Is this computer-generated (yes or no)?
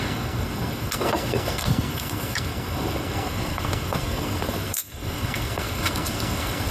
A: yes